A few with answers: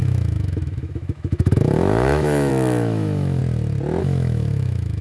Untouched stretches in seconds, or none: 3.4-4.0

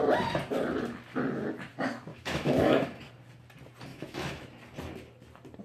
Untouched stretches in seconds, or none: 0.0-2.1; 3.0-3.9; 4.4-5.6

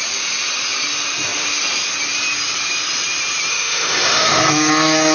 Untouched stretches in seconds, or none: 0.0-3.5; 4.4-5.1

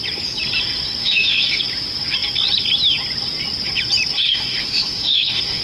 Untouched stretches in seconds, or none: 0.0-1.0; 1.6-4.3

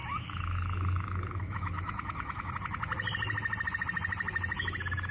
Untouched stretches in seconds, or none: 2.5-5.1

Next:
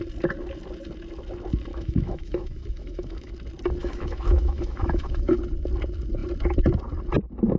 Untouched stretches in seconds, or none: 0.0-1.7; 3.3-3.8; 5.4-7.6

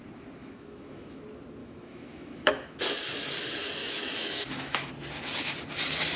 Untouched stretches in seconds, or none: 0.0-0.4; 1.2-1.6; 2.8-3.8; 4.9-6.2

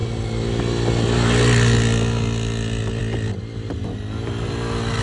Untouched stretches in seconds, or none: 0.0-5.0